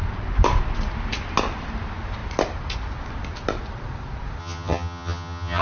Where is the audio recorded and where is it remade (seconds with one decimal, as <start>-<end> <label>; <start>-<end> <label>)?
0.0-4.4 recorded; 4.4-5.6 remade

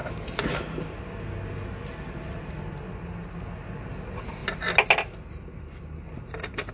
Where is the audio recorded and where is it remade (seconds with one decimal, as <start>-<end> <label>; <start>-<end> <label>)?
0.0-6.7 recorded

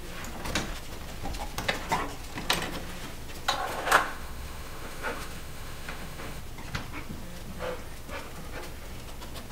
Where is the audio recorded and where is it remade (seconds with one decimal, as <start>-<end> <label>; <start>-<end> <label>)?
0.0-3.7 recorded; 3.7-6.4 remade; 6.4-9.5 recorded

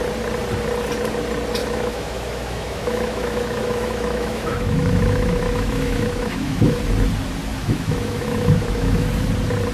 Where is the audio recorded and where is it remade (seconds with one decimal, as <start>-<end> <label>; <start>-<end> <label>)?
0.0-1.6 recorded; 1.6-6.8 remade; 6.8-7.5 recorded; 7.5-9.1 remade; 9.1-9.7 recorded